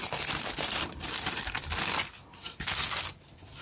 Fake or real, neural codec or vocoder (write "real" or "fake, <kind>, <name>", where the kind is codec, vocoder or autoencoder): real